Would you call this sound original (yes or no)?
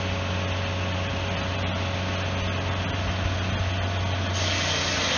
yes